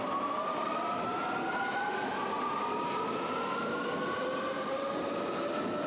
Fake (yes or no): no